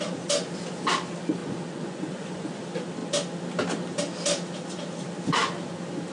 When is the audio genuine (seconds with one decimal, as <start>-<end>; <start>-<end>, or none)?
0.0-1.4; 2.6-6.1